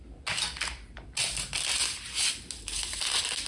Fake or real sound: real